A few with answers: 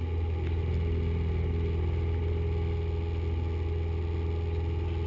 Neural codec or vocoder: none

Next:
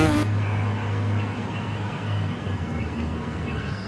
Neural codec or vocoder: codec, SNAC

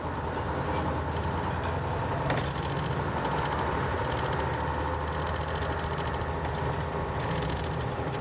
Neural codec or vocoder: none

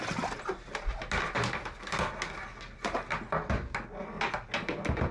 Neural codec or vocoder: none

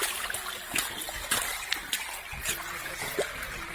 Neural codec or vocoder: none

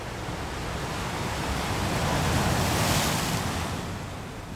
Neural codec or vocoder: none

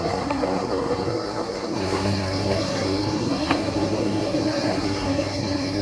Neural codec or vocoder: codec, SNAC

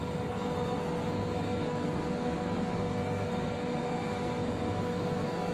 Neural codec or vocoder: codec, SNAC